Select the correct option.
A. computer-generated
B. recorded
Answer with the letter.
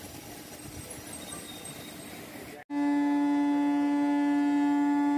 B